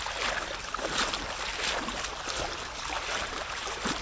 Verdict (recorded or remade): recorded